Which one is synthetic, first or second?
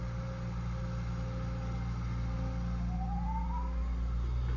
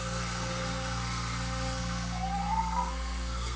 second